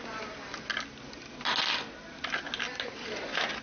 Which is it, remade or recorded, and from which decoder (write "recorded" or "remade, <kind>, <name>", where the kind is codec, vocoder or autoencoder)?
recorded